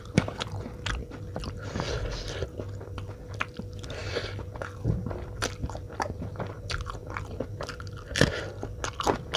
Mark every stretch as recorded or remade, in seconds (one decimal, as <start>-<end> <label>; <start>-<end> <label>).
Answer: 0.0-9.4 recorded